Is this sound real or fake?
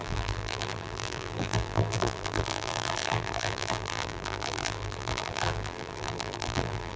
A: fake